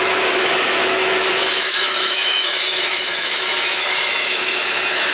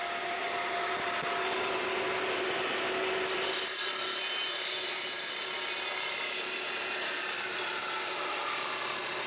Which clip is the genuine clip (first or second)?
second